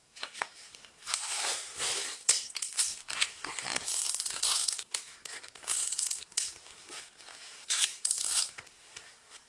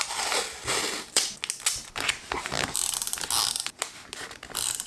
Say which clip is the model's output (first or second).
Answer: first